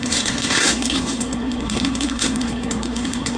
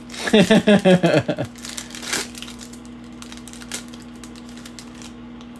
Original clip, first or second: second